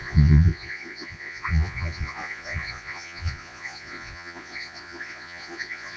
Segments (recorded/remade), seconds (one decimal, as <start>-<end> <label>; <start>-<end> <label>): 0.0-6.0 remade